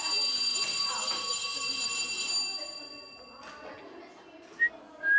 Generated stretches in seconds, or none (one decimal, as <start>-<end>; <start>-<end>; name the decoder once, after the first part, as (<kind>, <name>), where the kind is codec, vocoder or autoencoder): 0.5-2.3 (vocoder, BigVGAN v2)